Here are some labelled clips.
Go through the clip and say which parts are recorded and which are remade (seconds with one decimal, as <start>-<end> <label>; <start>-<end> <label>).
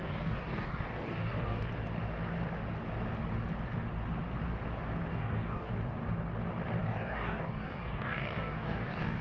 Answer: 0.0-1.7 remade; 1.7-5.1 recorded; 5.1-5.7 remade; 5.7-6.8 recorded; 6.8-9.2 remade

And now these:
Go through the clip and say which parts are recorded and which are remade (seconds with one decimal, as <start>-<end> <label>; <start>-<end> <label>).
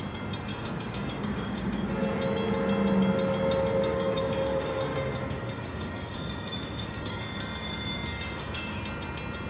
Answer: 0.0-0.5 recorded; 0.5-1.9 remade; 1.9-3.9 recorded; 3.9-8.8 remade; 8.8-9.5 recorded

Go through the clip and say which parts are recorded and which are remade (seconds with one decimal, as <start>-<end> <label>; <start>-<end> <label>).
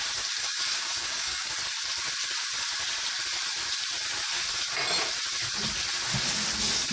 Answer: 0.0-0.4 recorded; 0.4-1.5 remade; 1.5-6.9 recorded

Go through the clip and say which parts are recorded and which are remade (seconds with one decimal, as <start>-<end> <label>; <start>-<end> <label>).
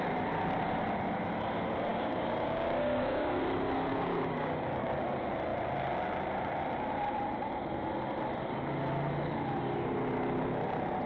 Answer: 0.0-1.9 recorded; 1.9-3.4 remade; 3.4-3.9 recorded; 3.9-5.0 remade; 5.0-11.1 recorded